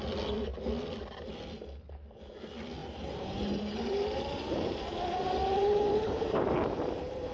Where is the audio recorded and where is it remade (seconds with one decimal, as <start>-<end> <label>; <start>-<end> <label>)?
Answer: 0.0-2.8 recorded; 2.8-7.3 remade